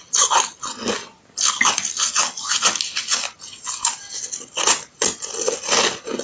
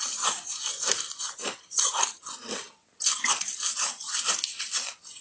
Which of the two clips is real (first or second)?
first